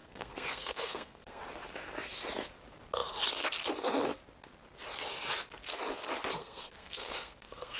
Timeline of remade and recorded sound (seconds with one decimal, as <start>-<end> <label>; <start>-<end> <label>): 0.0-1.4 remade; 1.4-6.4 recorded; 6.4-7.8 remade